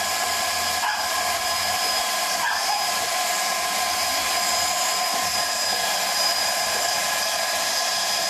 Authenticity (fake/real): fake